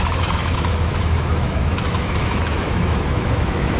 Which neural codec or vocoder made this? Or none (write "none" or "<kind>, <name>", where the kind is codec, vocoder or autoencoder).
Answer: autoencoder, DAC-VAE